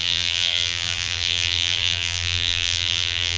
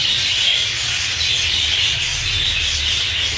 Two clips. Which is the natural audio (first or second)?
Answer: second